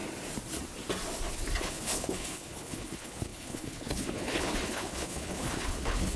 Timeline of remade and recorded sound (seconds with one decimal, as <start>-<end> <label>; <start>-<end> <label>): 0.0-1.6 recorded; 1.6-6.2 remade